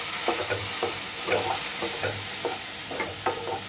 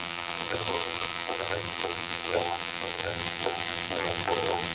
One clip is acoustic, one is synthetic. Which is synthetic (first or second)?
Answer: second